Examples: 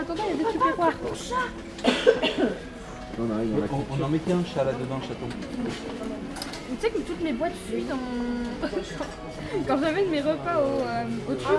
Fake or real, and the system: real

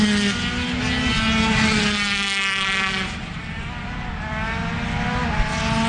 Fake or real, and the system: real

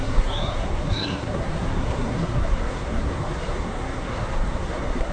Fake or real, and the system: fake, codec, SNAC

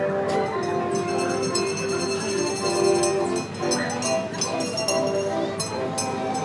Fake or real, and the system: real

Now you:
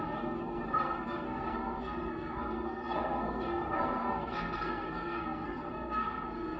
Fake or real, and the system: fake, codec, SNAC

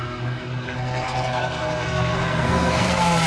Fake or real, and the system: fake, codec, SNAC